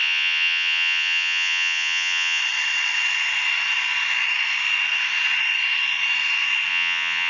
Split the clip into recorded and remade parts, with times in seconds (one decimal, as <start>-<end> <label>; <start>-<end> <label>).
0.0-2.4 remade; 2.4-6.7 recorded; 6.7-7.3 remade